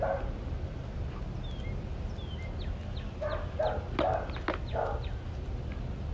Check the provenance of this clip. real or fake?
real